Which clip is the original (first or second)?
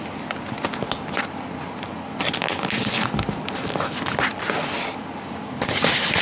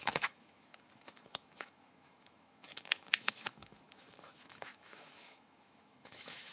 first